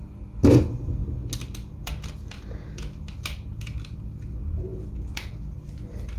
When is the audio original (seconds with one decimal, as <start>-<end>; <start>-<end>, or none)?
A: 0.0-6.2